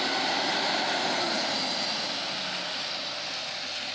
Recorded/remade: recorded